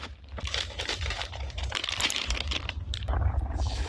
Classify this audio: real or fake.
fake